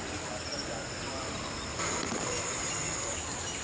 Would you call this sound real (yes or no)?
yes